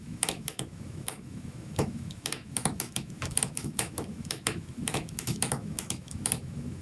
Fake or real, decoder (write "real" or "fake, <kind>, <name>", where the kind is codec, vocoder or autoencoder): fake, autoencoder, DAC-VAE